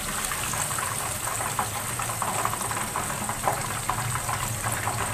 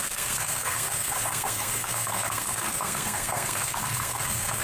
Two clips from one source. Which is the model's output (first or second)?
second